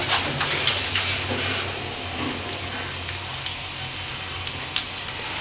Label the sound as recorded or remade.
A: recorded